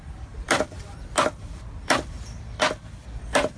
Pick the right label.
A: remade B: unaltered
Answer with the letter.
A